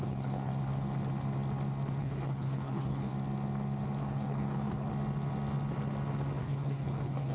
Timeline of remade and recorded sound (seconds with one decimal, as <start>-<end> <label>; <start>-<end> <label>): 0.0-0.5 remade; 0.5-2.0 recorded; 2.0-3.1 remade; 3.1-4.0 recorded; 4.0-4.9 remade; 4.9-6.4 recorded; 6.4-7.3 remade